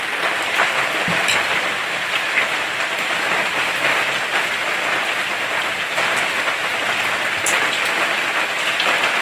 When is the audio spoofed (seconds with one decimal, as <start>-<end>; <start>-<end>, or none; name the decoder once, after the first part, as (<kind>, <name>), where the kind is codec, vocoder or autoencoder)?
none